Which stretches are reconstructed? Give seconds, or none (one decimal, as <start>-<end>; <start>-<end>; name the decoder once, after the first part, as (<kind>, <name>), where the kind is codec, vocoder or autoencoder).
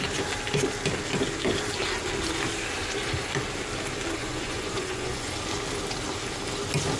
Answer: 4.2-5.3 (vocoder, Vocos)